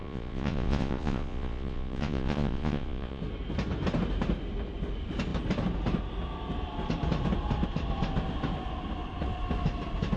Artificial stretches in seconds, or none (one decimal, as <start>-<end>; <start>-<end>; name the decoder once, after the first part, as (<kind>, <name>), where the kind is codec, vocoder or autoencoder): 0.0-3.2 (vocoder, Vocos)